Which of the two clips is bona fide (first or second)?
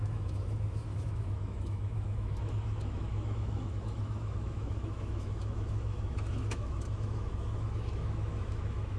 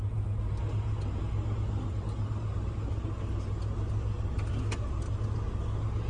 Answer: second